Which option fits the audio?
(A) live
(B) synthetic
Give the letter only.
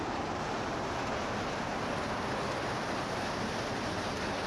A